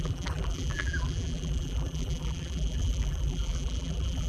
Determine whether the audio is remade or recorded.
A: remade